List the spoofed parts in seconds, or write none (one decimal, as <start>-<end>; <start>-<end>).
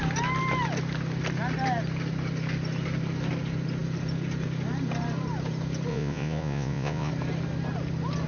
5.9-7.1